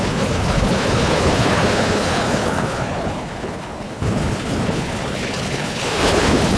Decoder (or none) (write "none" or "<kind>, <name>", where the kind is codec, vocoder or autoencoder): codec, HILCodec